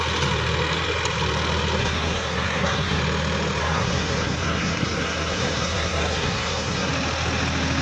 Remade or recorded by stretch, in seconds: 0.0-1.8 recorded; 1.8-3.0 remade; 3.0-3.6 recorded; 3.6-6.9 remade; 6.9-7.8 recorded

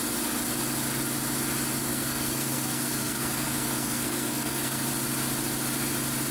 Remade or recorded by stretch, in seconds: 0.0-1.9 recorded; 1.9-4.9 remade; 4.9-6.3 recorded

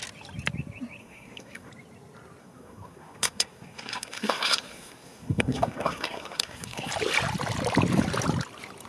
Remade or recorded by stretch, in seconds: 0.0-1.0 recorded; 1.0-1.7 remade; 1.7-2.4 recorded; 2.4-6.9 remade; 6.9-8.9 recorded

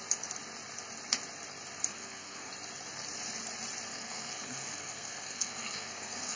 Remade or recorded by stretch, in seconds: 0.0-1.9 recorded; 1.9-2.5 remade; 2.5-3.9 recorded; 3.9-6.4 remade